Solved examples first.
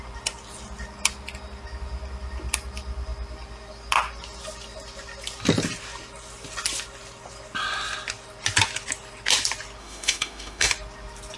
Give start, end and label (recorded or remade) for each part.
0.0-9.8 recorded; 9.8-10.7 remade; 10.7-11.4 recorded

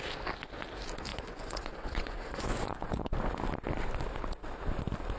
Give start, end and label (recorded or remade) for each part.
0.0-1.1 recorded; 1.1-3.1 remade; 3.1-5.2 recorded

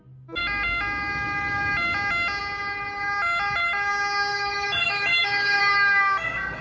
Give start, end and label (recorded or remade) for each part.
0.0-4.3 recorded; 4.3-5.6 remade; 5.6-6.6 recorded

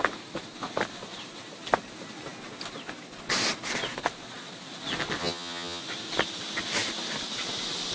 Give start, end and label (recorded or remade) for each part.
0.0-5.2 recorded; 5.2-5.8 remade; 5.8-7.9 recorded

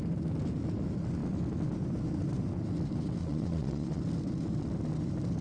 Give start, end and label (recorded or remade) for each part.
0.0-3.2 recorded; 3.2-4.0 remade; 4.0-5.4 recorded